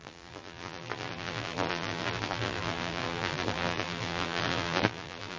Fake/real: fake